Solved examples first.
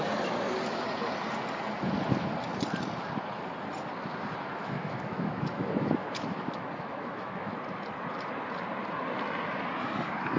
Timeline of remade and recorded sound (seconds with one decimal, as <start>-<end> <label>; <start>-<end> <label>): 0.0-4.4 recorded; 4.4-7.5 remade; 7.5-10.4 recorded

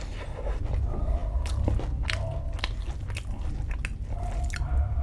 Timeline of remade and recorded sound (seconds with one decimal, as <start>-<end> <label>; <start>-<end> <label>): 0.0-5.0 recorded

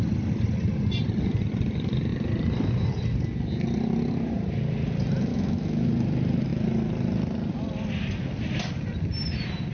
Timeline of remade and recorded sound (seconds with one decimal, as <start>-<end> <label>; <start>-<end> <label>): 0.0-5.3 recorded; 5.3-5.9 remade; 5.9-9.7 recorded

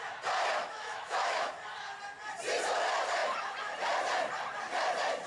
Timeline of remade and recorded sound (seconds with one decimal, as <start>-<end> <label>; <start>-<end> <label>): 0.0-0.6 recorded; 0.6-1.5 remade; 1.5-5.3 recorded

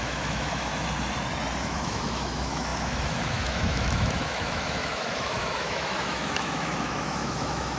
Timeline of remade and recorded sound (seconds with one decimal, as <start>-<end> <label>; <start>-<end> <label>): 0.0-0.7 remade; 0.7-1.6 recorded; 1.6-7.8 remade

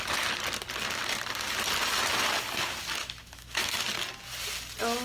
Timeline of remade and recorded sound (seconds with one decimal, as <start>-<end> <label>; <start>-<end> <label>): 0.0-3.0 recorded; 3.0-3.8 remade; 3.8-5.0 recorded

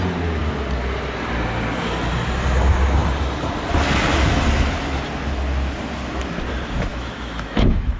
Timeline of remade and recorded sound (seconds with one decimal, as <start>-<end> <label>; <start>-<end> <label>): 0.0-6.9 recorded; 6.9-8.0 remade

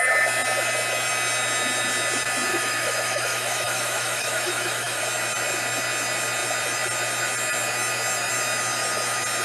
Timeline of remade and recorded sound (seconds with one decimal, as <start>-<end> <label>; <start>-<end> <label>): 0.0-2.5 recorded; 2.5-5.0 remade; 5.0-9.4 recorded